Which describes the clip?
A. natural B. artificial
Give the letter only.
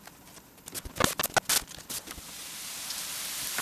A